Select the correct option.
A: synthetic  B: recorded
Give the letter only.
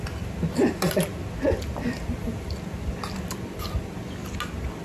B